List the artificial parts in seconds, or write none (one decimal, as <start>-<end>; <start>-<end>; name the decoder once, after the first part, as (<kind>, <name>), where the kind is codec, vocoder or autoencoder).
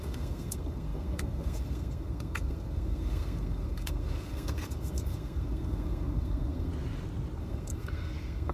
0.0-6.7 (codec, SNAC); 7.4-8.5